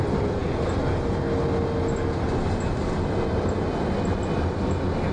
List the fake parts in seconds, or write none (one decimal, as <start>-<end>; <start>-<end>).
none